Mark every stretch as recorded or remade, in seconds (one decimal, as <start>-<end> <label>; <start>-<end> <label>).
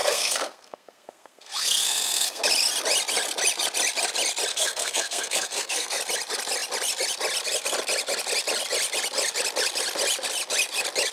0.0-2.4 remade; 2.4-4.5 recorded; 4.5-6.0 remade; 6.0-11.1 recorded